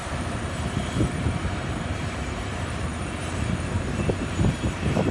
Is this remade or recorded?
remade